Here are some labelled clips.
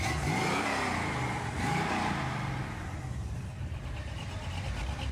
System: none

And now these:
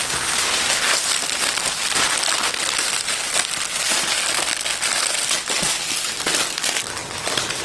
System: none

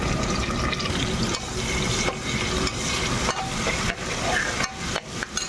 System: none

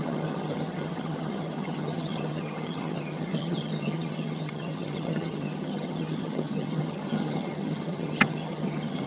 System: vocoder, HiFi-GAN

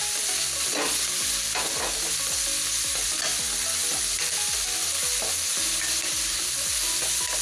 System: none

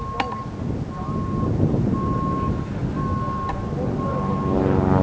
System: none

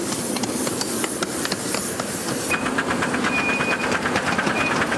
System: none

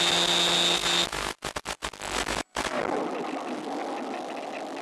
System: none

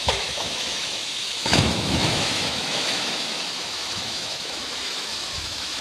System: autoencoder, DAC-VAE